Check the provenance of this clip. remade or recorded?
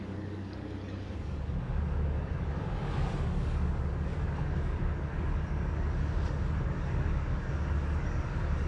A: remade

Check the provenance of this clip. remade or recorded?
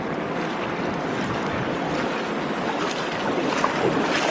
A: recorded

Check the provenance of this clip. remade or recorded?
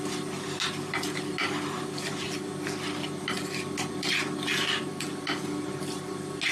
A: recorded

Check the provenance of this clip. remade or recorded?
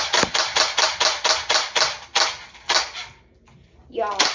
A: recorded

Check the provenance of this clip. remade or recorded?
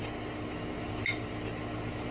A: recorded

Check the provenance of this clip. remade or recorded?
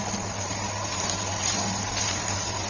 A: recorded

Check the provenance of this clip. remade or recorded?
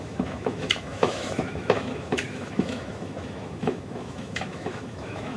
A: remade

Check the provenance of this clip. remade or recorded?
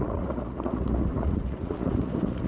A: remade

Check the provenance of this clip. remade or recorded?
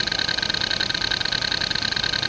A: recorded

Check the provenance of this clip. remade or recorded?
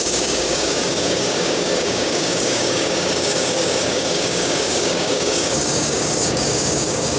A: remade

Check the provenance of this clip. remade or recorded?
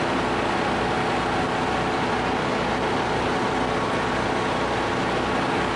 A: recorded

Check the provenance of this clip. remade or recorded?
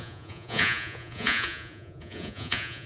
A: remade